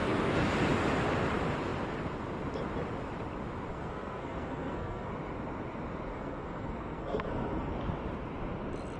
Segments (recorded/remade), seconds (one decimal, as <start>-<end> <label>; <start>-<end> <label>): 0.0-0.5 remade; 0.5-3.7 recorded; 3.7-5.1 remade; 5.1-6.1 recorded; 6.1-7.7 remade; 7.7-9.0 recorded